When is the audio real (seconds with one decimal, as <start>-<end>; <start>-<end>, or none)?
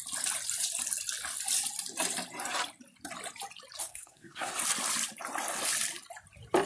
0.0-3.8; 4.5-6.7